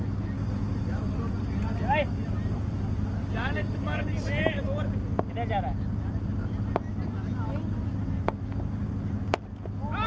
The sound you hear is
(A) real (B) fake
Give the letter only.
A